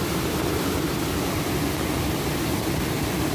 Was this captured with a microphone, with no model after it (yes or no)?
yes